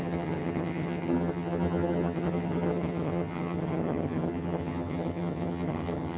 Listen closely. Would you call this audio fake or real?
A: fake